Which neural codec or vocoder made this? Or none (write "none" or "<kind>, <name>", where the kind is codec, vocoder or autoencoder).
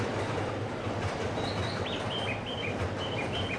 none